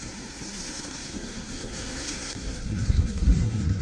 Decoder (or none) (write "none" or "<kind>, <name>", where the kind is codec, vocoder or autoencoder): codec, SNAC